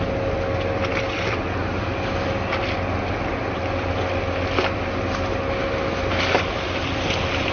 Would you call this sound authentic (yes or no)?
yes